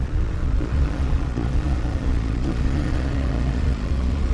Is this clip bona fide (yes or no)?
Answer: no